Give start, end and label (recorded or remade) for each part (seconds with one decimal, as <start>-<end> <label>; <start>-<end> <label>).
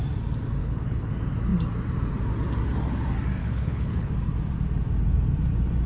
0.0-0.6 recorded; 0.6-1.1 remade; 1.1-3.4 recorded; 3.4-4.1 remade; 4.1-5.9 recorded